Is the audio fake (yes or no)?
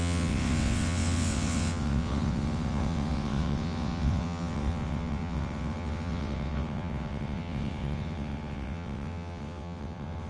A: yes